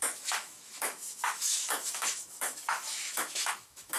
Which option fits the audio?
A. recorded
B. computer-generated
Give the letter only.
B